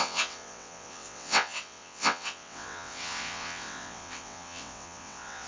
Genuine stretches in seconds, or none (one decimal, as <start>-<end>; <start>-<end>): none